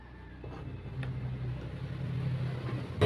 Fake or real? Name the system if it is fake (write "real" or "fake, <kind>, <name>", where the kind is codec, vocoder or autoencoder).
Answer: real